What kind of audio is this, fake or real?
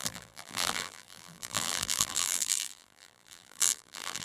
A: fake